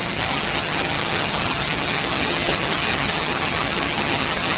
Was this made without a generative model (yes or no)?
no